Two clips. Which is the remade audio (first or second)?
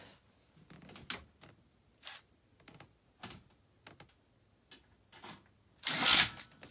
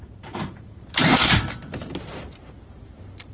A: second